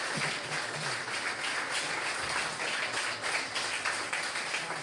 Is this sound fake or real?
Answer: real